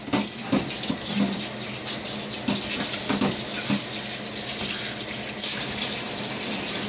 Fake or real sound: real